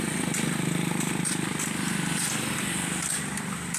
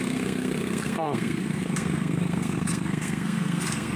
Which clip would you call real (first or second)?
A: first